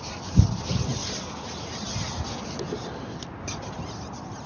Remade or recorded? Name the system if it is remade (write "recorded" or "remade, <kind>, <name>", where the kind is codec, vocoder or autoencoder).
recorded